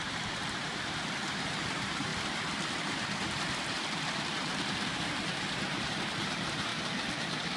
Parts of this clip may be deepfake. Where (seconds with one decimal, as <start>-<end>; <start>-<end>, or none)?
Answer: 0.0-2.1; 2.8-6.7